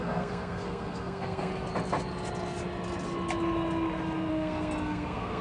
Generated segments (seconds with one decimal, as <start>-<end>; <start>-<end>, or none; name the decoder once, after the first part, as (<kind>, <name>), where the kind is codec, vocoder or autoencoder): 0.0-1.5 (codec, SNAC); 4.3-5.4